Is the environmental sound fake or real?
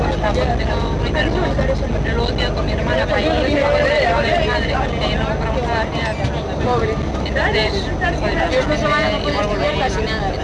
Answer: real